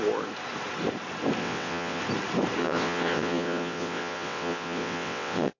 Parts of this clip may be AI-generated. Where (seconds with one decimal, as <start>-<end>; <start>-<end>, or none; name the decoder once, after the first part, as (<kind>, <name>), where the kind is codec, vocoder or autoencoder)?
1.4-2.0 (vocoder, WaveNeXt); 2.6-5.6